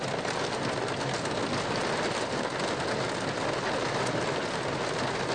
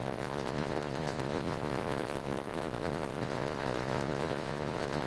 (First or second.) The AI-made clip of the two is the second